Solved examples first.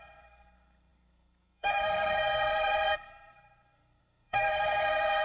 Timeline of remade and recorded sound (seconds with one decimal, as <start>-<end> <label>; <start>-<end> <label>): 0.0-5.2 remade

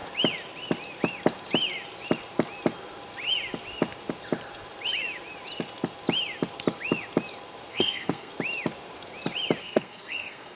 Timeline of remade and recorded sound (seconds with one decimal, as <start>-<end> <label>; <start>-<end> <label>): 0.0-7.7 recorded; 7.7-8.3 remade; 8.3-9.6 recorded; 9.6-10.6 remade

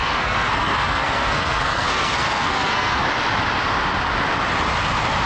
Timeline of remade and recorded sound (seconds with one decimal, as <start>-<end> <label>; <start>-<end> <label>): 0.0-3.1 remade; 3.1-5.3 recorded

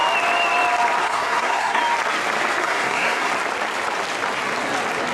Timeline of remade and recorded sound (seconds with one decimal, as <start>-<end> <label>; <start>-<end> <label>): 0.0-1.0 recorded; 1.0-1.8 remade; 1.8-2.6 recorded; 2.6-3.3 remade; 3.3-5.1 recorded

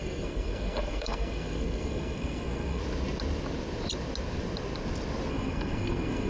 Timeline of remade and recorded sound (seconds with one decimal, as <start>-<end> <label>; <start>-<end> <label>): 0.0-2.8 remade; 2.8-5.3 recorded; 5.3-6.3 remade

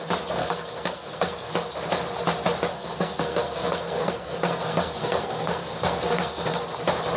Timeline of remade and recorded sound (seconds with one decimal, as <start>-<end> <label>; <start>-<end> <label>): 0.0-0.4 recorded; 0.4-1.5 remade; 1.5-2.7 recorded; 2.7-6.6 remade; 6.6-7.2 recorded

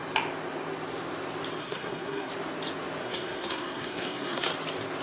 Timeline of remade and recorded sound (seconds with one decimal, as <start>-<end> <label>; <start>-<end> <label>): 0.0-1.6 recorded; 1.6-2.3 remade; 2.3-3.0 recorded; 3.0-4.5 remade; 4.5-5.0 recorded

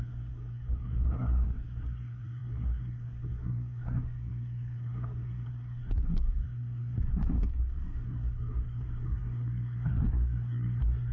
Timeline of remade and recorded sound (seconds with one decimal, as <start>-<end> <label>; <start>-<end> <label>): 0.0-11.1 remade